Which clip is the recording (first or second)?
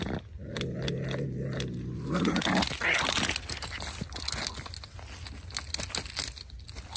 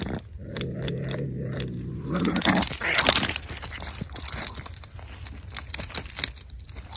first